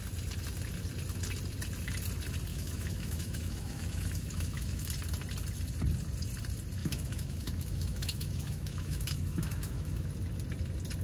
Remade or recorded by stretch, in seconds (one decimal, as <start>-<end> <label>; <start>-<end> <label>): 0.0-2.5 recorded; 2.5-4.9 remade; 4.9-6.8 recorded; 6.8-10.1 remade; 10.1-11.0 recorded